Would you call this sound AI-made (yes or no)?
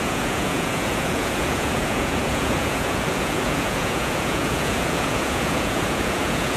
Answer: yes